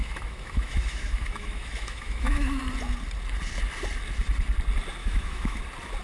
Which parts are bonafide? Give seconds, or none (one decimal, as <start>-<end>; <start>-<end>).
2.6-5.0; 5.6-6.0